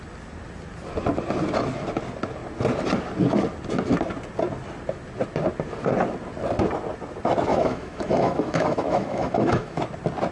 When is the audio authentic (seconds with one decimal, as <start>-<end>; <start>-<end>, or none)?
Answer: 0.0-7.5; 9.8-10.3